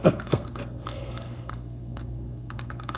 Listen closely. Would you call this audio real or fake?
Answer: fake